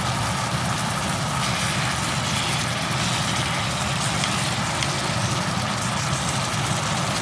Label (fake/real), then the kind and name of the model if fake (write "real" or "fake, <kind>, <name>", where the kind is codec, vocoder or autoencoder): real